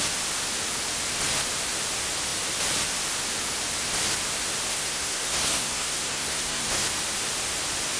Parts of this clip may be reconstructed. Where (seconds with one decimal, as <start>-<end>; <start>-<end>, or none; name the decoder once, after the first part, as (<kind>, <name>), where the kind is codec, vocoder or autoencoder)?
4.7-6.8 (codec, SNAC)